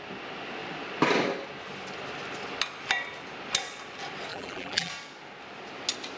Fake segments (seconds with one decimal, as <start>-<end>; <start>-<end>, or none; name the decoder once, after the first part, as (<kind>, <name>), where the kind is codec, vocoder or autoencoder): 4.3-4.9 (vocoder, BigVGAN v2)